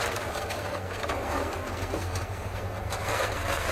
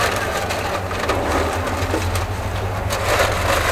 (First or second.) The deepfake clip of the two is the first